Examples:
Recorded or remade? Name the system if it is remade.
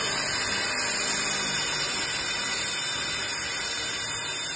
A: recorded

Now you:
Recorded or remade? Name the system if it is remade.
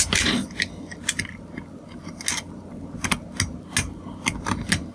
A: recorded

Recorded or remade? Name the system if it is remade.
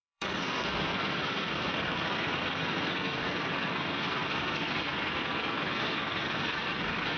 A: remade, codec, SNAC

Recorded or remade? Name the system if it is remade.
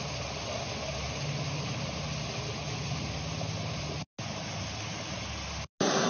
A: recorded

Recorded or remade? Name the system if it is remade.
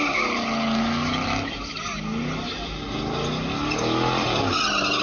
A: recorded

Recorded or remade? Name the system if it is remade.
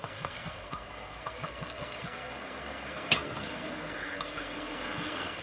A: remade, codec, SNAC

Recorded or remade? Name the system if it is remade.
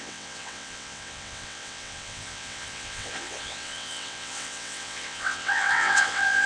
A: remade, vocoder, WaveNeXt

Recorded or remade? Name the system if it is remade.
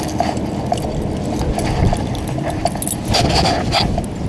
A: recorded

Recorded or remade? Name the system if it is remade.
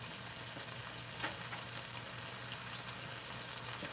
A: recorded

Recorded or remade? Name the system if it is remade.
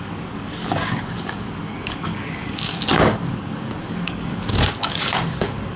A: remade, codec, DAC